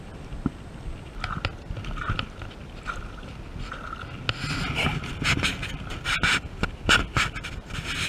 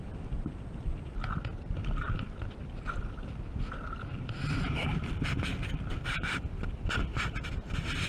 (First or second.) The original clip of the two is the first